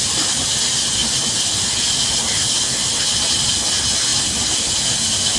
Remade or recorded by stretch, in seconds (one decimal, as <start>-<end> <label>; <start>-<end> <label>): 0.0-5.4 recorded